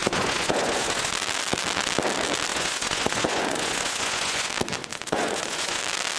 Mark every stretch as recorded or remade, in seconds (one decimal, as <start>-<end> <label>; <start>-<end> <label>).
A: 0.0-1.1 remade; 1.1-2.5 recorded; 2.5-4.5 remade; 4.5-4.9 recorded; 4.9-5.8 remade; 5.8-6.2 recorded